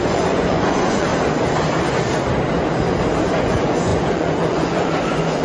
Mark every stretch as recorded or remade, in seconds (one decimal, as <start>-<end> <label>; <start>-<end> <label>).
0.0-1.1 remade; 1.1-3.2 recorded; 3.2-5.4 remade